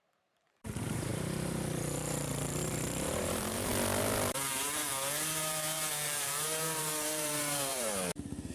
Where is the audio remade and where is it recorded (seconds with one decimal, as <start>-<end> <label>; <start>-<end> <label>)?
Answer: 0.0-3.7 remade; 3.7-4.3 recorded; 4.3-8.5 remade